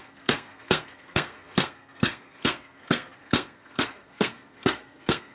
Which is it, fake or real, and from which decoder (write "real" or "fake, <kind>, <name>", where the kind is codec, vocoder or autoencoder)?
fake, codec, SNAC